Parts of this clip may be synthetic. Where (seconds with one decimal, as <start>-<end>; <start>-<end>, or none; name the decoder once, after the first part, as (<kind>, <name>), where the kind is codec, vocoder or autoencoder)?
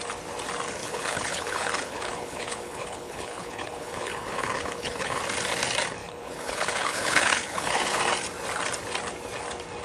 0.8-5.2 (codec, HILCodec); 6.0-8.0